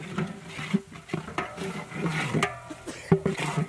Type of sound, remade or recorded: recorded